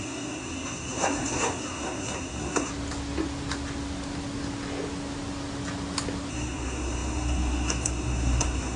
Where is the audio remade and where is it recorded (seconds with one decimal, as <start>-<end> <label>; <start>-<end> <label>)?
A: 0.0-2.7 remade; 2.7-6.3 recorded; 6.3-8.8 remade